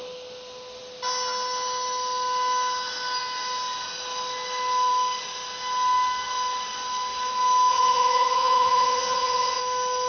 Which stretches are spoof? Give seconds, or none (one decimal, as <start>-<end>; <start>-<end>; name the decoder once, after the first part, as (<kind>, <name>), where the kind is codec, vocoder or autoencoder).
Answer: 7.7-9.6 (vocoder, HiFi-GAN)